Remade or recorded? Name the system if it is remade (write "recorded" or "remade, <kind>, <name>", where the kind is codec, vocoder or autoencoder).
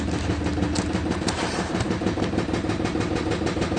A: recorded